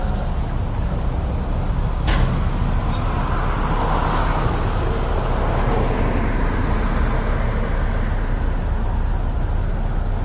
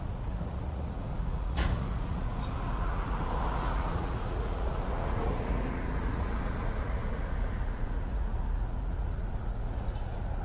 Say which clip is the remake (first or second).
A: second